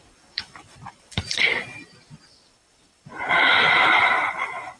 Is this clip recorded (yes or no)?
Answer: no